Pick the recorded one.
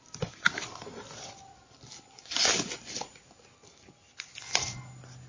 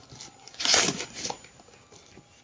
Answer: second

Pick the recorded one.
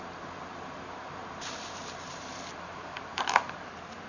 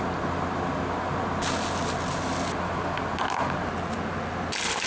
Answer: second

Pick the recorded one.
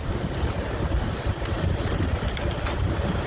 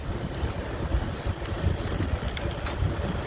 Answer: second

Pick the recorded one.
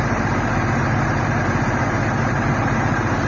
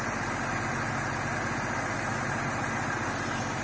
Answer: second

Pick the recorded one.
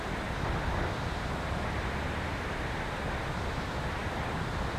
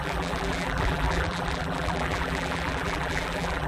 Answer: first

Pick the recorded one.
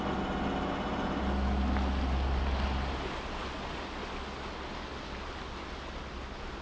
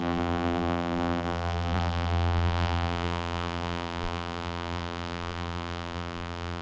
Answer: first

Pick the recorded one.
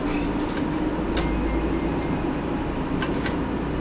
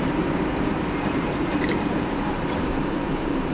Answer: first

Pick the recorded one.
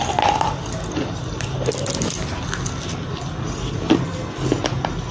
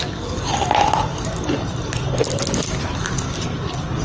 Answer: first